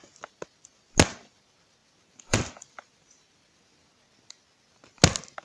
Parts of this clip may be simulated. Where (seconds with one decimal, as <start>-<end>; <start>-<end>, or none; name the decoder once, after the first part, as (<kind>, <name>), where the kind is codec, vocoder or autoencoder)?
1.8-3.9 (vocoder, BigVGAN v2)